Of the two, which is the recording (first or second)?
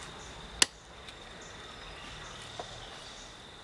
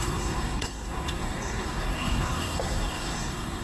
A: first